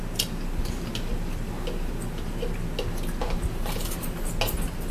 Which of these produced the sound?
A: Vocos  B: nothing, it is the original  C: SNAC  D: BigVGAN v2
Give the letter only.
B